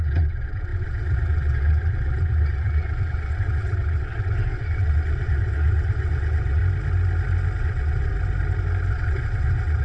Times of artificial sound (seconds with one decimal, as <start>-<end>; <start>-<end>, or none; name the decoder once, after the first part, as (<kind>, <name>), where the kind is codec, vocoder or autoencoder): 0.0-6.6 (vocoder, WaveNeXt); 7.6-8.1; 8.9-9.8